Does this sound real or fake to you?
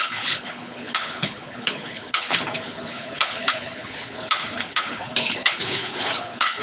fake